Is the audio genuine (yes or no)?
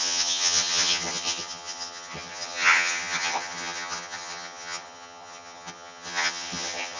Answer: no